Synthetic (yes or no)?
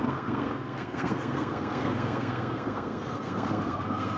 yes